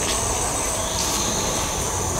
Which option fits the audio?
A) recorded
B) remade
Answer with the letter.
A